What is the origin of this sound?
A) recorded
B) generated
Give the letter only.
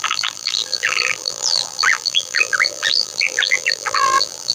B